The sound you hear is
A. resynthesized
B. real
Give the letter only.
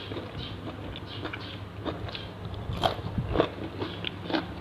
B